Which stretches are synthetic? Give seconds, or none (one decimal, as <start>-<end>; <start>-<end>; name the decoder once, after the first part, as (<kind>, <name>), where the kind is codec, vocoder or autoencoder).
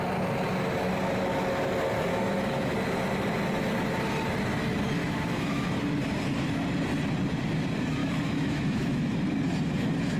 2.1-2.7 (autoencoder, DAC-VAE); 5.0-5.8; 8.0-9.1